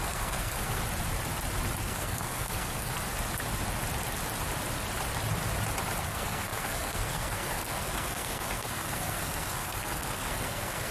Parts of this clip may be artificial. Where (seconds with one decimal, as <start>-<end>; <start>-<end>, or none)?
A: 0.0-0.8; 1.8-2.9; 6.0-10.9